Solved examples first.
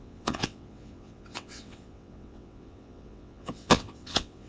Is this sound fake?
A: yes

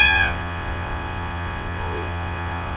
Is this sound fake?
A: yes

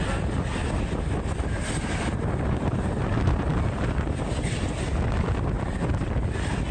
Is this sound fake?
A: no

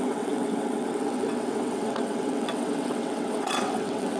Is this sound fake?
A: yes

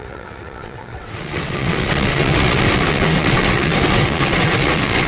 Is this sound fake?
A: yes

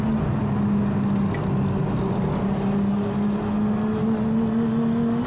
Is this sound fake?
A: no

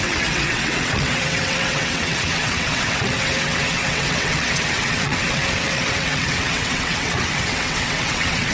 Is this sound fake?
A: yes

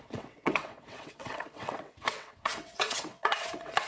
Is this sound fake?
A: yes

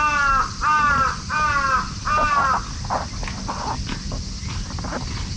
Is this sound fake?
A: no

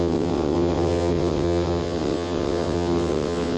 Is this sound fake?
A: yes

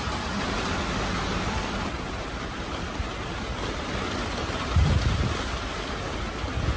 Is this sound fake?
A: no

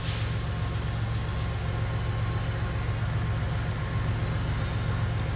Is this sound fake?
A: no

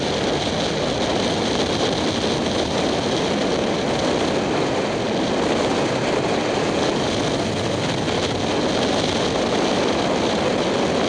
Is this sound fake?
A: no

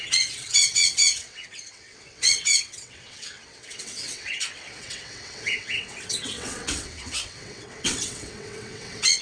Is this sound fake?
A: yes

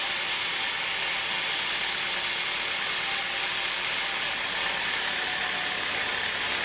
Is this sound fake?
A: no